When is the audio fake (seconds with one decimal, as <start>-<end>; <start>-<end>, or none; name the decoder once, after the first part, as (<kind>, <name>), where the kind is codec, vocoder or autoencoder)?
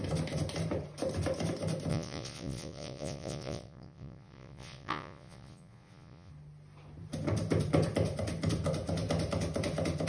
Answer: 1.9-6.3 (vocoder, Vocos)